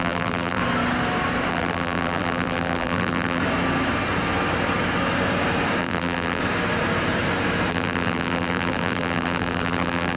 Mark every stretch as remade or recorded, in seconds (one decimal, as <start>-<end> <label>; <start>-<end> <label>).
0.0-0.6 remade; 0.6-1.5 recorded; 1.5-3.4 remade; 3.4-5.8 recorded; 5.8-6.4 remade; 6.4-7.7 recorded; 7.7-10.2 remade